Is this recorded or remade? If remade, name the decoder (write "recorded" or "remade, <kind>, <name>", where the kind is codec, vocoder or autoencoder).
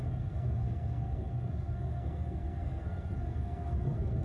remade, codec, SNAC